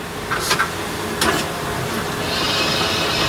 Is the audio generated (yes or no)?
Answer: no